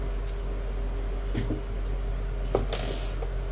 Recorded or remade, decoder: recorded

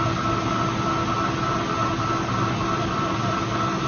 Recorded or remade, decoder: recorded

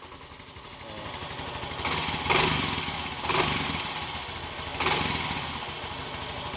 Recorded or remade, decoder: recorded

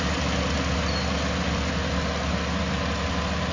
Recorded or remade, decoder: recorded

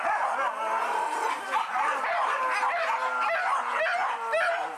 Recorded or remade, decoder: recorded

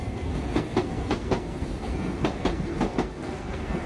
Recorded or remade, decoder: remade, codec, SNAC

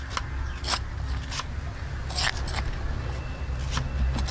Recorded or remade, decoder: recorded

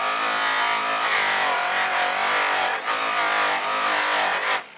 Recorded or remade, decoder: recorded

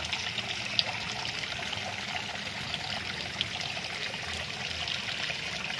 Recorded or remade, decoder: recorded